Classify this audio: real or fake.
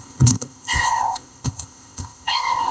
fake